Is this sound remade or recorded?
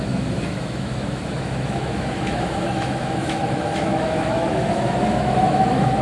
remade